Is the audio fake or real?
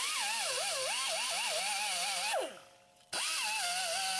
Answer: real